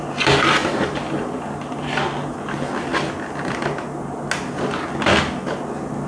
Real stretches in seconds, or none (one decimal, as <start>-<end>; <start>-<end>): 0.0-0.6; 1.4-6.1